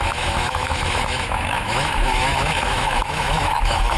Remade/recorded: remade